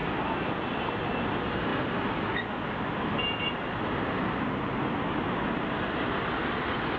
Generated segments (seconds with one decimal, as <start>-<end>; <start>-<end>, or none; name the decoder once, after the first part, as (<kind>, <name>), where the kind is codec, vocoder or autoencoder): none